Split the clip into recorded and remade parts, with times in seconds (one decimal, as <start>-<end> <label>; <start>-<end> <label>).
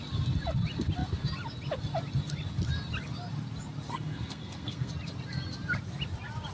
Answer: 0.0-3.9 recorded; 3.9-4.9 remade; 4.9-6.5 recorded